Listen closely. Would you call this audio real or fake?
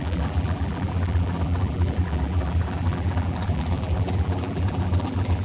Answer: fake